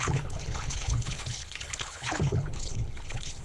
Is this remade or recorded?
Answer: remade